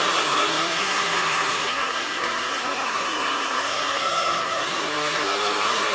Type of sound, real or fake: fake